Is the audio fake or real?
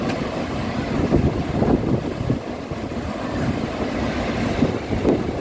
real